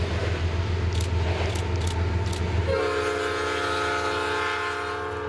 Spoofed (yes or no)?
no